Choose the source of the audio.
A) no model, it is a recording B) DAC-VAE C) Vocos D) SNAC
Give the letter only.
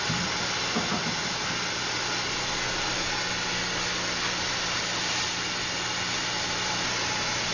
A